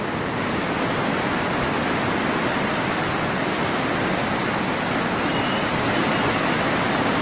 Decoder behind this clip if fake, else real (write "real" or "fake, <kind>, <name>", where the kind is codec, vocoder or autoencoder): real